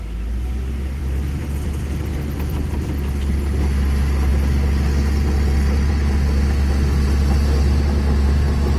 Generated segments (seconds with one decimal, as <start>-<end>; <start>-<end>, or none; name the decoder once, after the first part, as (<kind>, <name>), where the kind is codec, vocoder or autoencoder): 1.0-2.9 (vocoder, BigVGAN v2)